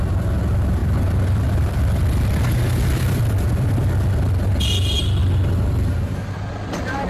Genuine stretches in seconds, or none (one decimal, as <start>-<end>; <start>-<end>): 0.0-0.8; 3.2-7.1